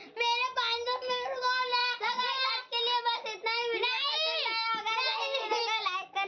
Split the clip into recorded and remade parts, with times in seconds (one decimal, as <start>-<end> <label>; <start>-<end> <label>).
0.0-3.8 recorded; 3.8-4.4 remade; 4.4-5.6 recorded; 5.6-6.3 remade